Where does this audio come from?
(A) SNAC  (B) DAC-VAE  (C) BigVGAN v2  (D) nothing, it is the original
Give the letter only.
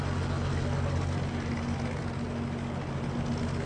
D